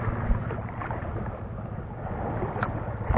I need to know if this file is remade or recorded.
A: recorded